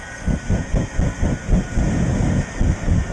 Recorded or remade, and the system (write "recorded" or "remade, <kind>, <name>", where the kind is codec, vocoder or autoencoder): recorded